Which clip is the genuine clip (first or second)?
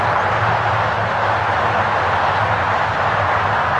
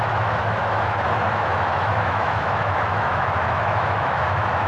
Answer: first